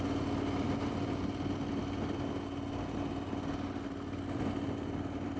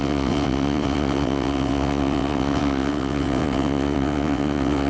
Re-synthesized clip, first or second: second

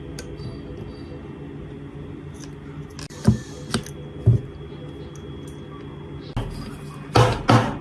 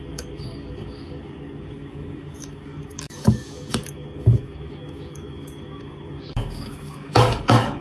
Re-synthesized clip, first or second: second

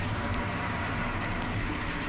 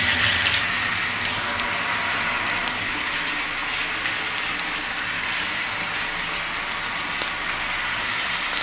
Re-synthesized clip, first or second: first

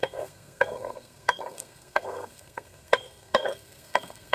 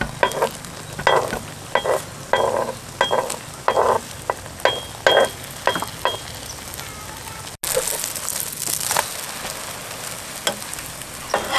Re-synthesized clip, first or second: first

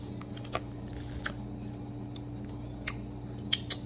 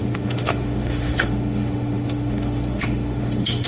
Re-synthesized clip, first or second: second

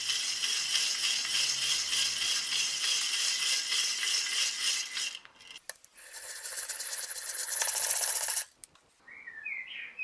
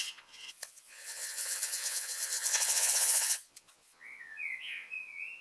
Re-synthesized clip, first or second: second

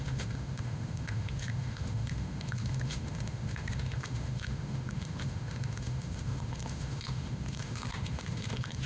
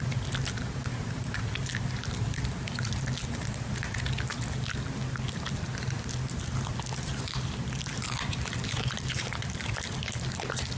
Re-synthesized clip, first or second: first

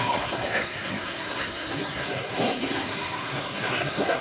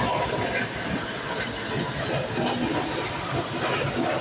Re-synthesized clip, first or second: first